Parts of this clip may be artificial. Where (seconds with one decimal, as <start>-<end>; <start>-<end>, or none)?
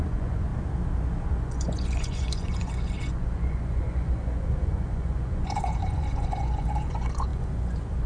0.0-0.5; 1.4-8.1